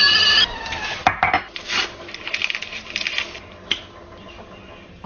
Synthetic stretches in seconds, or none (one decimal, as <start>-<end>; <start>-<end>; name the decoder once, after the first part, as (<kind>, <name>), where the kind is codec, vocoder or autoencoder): none